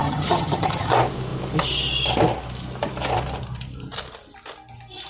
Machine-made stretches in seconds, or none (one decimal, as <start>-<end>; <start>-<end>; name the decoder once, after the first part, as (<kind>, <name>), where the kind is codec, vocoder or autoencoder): 0.0-0.9 (vocoder, HiFi-GAN)